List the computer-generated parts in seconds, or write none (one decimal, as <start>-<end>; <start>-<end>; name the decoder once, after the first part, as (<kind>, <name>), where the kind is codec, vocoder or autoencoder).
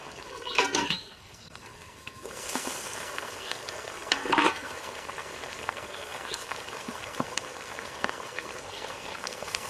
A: 0.0-9.7 (codec, SNAC)